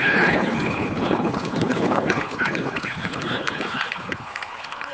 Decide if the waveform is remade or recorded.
remade